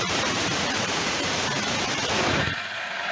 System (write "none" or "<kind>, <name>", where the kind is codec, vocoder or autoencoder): vocoder, Vocos